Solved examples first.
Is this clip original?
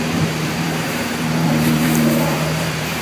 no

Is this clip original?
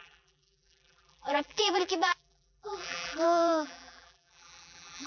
no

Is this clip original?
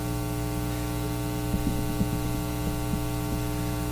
yes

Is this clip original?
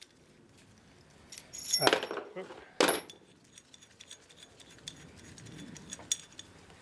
yes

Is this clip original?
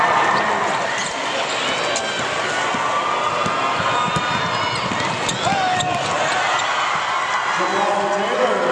yes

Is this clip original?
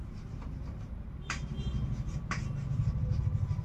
no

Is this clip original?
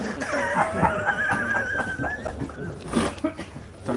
yes